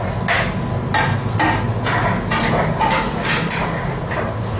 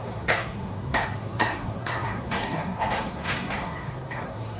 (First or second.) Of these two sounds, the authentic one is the first